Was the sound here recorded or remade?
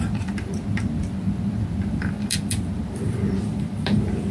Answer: remade